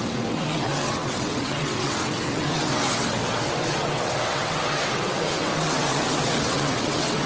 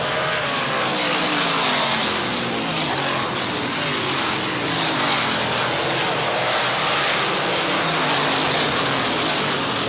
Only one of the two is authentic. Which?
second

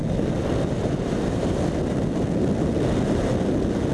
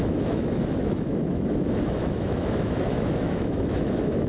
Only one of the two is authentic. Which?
first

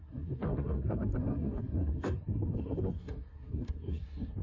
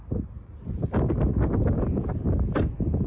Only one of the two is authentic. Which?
second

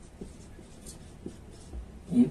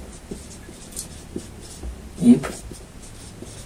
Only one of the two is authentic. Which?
second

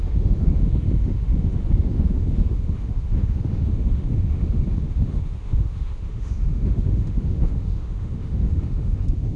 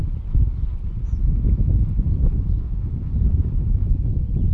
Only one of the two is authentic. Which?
second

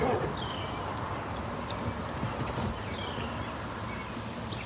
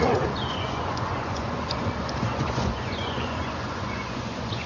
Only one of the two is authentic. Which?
first